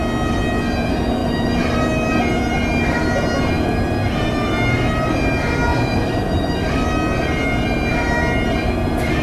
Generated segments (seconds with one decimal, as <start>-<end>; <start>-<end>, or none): 1.2-2.2; 5.7-6.9